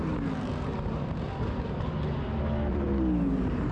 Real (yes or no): yes